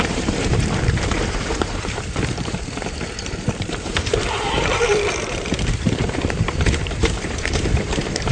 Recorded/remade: remade